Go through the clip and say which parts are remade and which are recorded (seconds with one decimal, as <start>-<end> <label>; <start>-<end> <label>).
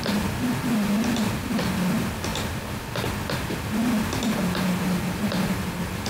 0.0-6.1 recorded